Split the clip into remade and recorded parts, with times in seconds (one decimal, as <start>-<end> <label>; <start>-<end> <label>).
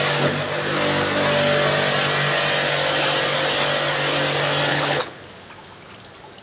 0.0-4.7 recorded; 4.7-5.2 remade; 5.2-6.4 recorded